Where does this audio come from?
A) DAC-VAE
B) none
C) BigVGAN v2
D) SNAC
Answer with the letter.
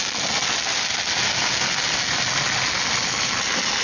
B